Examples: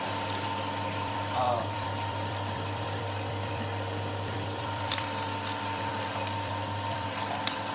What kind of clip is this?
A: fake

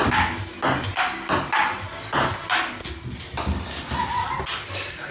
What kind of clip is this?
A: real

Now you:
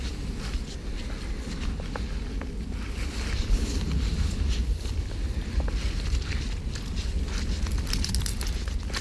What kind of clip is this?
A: real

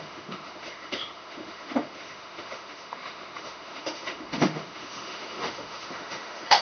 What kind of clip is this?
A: fake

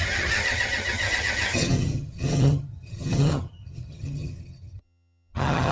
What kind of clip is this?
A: fake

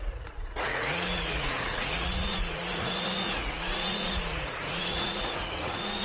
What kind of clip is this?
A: fake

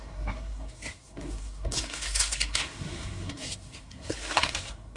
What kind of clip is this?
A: fake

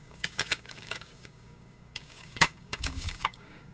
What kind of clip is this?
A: fake